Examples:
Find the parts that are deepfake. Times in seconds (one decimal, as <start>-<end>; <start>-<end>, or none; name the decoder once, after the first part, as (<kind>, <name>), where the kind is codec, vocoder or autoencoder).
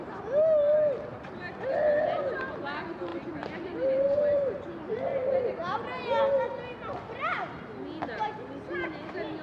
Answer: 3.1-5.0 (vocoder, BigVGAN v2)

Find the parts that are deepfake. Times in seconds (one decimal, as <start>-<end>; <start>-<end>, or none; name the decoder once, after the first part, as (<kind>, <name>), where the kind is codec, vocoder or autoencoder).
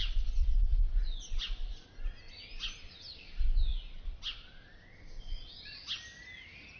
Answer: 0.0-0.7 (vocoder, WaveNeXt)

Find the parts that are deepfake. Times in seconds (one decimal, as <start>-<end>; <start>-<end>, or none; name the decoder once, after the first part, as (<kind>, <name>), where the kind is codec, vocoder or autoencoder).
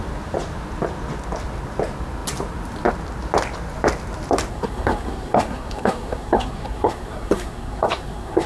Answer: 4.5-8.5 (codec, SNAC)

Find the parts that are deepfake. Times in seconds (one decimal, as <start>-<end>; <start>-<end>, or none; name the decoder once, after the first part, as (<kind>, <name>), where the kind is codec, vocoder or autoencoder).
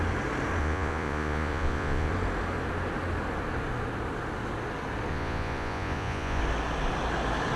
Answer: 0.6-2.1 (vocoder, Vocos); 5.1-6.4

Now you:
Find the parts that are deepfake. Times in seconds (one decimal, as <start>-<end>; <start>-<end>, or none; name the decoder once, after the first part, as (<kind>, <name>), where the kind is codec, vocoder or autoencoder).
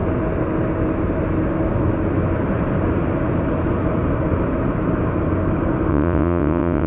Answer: 5.9-6.9 (vocoder, WaveNeXt)